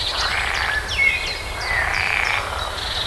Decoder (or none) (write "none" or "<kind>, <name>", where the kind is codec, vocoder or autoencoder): none